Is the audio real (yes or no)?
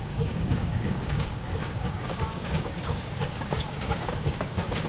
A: no